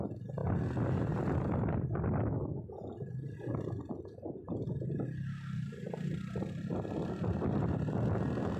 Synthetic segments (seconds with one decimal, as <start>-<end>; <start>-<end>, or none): none